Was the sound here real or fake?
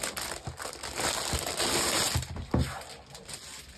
real